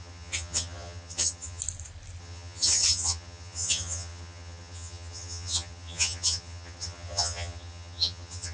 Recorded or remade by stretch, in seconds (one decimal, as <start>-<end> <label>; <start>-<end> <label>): 0.0-1.6 remade; 1.6-2.2 recorded; 2.2-8.5 remade